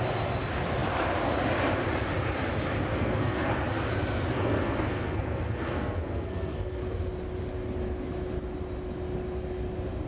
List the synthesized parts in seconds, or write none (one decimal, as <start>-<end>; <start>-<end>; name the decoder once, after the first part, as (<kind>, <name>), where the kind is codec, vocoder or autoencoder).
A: 2.9-3.5 (codec, SNAC); 4.3-6.8